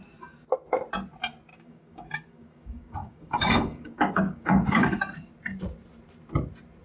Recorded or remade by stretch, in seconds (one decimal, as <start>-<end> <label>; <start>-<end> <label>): 0.0-1.5 recorded; 1.5-5.0 remade; 5.0-6.8 recorded